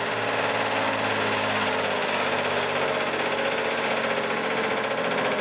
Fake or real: real